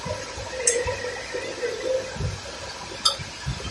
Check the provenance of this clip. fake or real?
real